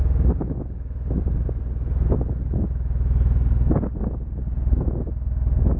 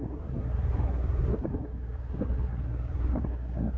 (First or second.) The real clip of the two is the first